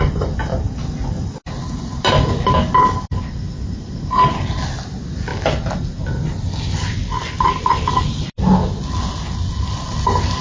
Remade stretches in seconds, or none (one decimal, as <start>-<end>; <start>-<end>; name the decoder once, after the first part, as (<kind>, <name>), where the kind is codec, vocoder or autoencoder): none

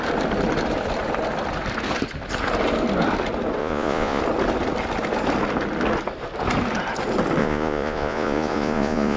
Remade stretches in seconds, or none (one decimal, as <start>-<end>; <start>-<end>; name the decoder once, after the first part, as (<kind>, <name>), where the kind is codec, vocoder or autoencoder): 3.6-4.2 (vocoder, Vocos); 7.4-9.2

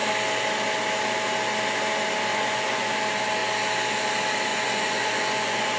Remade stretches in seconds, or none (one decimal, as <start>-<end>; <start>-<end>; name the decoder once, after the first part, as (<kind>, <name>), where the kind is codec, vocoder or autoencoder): 2.3-2.9 (vocoder, Vocos); 4.5-5.8